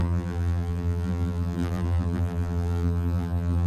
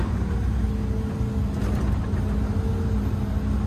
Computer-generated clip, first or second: first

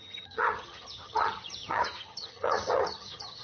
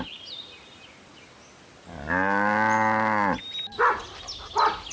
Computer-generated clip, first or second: first